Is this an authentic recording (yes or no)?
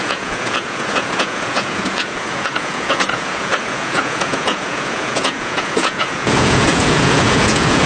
no